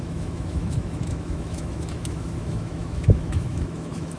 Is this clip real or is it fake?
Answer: fake